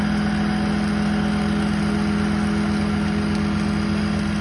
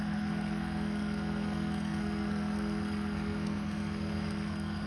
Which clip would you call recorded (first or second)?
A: first